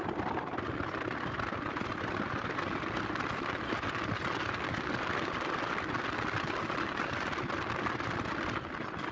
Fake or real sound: real